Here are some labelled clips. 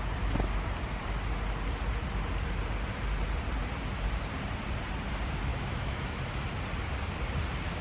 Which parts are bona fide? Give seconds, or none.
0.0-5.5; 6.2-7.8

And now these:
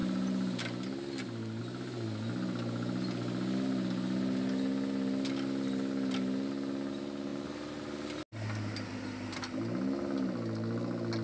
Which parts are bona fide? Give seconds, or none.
0.0-11.2

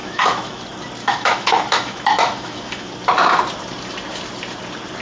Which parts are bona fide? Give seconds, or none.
0.6-1.0; 2.9-5.0

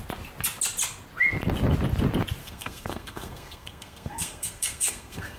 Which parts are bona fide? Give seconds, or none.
0.0-2.4